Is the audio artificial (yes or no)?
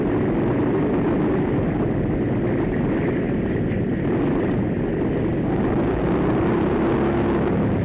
no